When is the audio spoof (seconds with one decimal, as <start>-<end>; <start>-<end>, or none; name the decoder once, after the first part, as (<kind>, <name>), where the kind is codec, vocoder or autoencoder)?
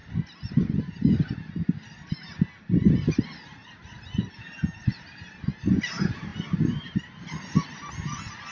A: none